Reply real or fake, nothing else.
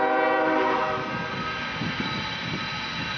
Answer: real